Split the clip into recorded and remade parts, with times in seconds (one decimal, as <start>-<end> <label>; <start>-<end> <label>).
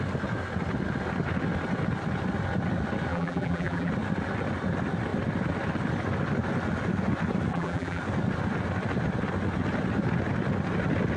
0.0-3.1 recorded; 3.1-3.9 remade; 3.9-7.5 recorded; 7.5-8.0 remade; 8.0-11.2 recorded